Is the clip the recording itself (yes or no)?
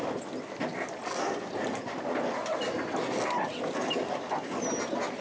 yes